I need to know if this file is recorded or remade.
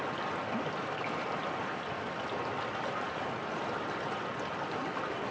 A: recorded